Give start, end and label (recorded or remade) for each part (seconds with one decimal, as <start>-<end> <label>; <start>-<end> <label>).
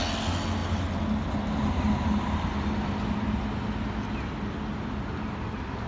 0.0-5.9 recorded